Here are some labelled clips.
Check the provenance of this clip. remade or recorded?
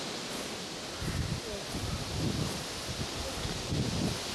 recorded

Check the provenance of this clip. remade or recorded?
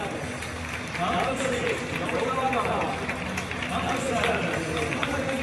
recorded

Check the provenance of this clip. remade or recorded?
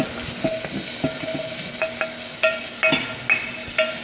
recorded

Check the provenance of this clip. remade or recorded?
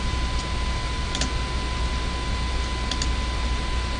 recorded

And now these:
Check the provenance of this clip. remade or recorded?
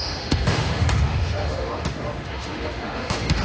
remade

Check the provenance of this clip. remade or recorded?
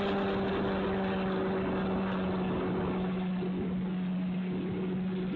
recorded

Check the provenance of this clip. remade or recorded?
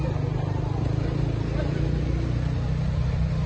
recorded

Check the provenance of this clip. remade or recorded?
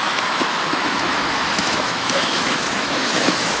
remade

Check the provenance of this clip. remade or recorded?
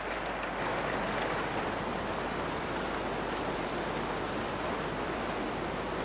recorded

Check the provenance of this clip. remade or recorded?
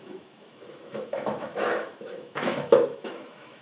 remade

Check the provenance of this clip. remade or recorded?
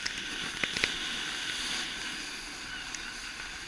recorded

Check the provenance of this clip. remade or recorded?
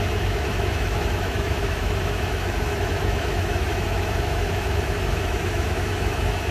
remade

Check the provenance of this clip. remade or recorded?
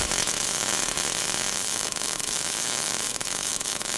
remade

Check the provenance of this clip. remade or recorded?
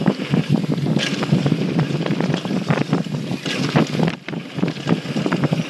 recorded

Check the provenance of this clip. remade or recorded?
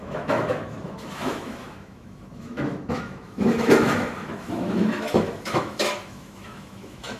remade